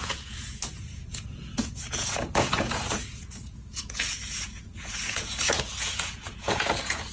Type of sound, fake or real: fake